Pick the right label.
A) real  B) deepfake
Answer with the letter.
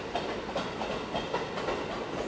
A